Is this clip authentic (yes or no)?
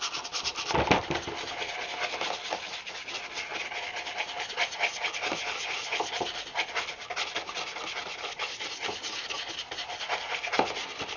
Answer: yes